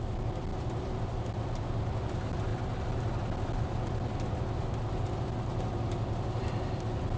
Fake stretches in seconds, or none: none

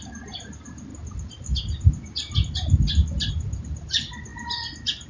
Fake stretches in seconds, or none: 0.0-0.9 (vocoder, BigVGAN v2); 3.3-5.1

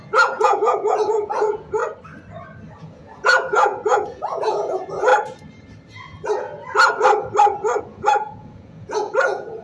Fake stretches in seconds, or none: 0.0-1.8 (vocoder, Vocos); 2.8-5.1; 7.8-9.6

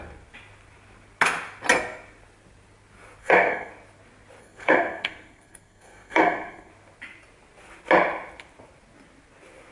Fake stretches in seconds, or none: 3.2-3.7 (codec, SNAC); 4.4-6.7